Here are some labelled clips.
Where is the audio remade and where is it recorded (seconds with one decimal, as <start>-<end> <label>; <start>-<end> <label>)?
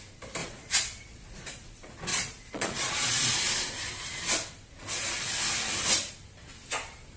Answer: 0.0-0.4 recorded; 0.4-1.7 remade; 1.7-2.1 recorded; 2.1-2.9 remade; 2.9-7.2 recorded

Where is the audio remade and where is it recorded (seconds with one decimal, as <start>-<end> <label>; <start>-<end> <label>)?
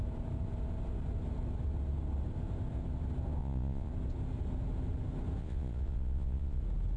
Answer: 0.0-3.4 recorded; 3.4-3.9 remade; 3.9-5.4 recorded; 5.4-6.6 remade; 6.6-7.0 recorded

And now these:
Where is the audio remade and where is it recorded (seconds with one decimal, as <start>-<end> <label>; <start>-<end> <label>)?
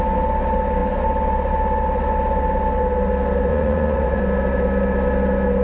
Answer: 0.0-3.5 recorded; 3.5-4.2 remade; 4.2-5.6 recorded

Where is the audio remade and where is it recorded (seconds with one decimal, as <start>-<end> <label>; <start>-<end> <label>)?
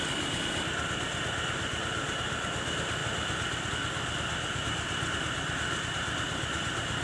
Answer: 0.0-7.0 recorded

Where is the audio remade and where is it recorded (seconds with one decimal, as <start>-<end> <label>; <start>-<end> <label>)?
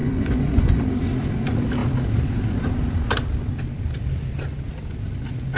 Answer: 0.0-0.8 remade; 0.8-5.6 recorded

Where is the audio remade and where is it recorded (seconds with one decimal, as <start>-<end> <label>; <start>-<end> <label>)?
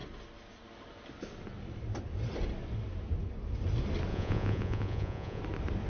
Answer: 0.0-4.1 recorded; 4.1-5.4 remade; 5.4-5.9 recorded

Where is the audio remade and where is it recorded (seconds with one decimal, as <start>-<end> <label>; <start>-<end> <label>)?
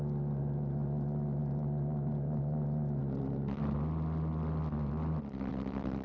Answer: 0.0-6.0 recorded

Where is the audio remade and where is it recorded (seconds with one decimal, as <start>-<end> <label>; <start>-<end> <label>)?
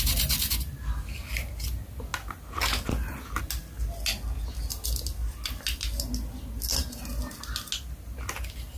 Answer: 0.0-8.8 recorded